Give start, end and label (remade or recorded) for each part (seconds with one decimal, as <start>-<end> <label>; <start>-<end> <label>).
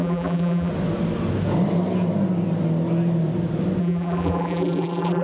0.0-0.7 remade; 0.7-3.8 recorded; 3.8-5.2 remade